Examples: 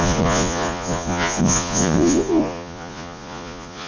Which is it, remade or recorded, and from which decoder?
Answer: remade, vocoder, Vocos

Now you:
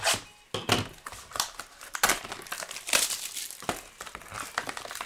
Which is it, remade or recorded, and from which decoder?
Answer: recorded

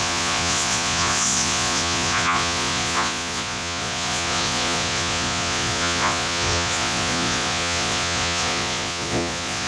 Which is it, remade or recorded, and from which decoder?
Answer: remade, vocoder, Vocos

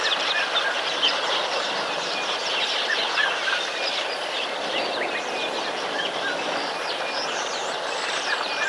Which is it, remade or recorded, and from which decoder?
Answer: recorded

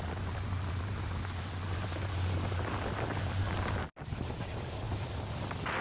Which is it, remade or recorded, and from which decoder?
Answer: recorded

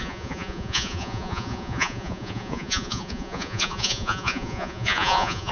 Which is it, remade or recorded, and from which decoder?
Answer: remade, vocoder, Vocos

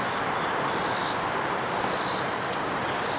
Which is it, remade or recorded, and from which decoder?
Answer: recorded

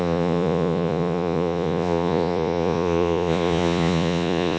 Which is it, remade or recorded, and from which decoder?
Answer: remade, vocoder, Vocos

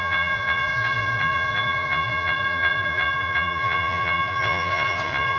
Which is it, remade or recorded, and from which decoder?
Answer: remade, vocoder, Vocos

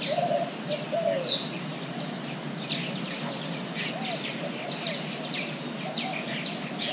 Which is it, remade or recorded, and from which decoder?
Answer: recorded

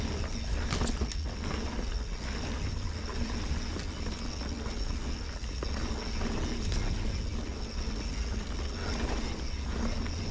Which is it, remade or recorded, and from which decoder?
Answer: recorded